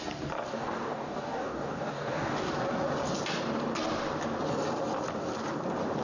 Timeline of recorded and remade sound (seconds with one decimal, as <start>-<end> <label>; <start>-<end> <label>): 0.0-0.5 recorded; 0.5-2.5 remade; 2.5-6.0 recorded